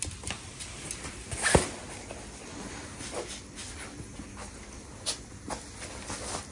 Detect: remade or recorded recorded